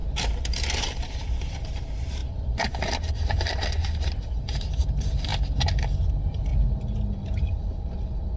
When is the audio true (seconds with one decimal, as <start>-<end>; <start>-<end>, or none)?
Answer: 0.0-0.8; 2.2-3.1; 5.3-6.0; 6.5-8.4